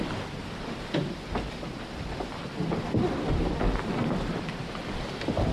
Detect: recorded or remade recorded